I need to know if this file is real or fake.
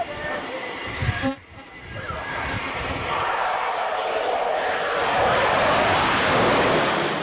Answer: fake